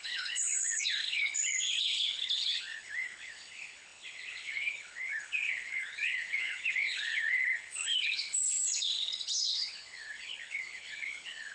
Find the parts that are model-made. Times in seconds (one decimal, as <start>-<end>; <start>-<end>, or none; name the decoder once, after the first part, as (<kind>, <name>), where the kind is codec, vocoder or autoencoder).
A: 0.0-11.5 (codec, HILCodec)